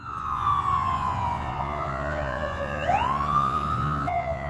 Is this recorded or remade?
remade